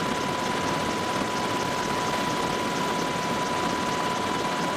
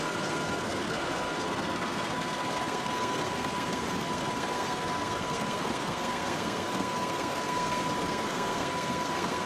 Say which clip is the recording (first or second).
first